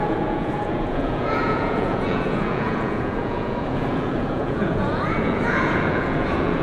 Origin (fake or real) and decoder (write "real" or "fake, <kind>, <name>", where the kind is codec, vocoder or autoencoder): fake, vocoder, Vocos